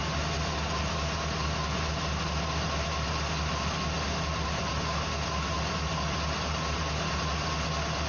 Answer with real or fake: real